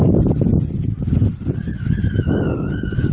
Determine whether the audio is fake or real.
fake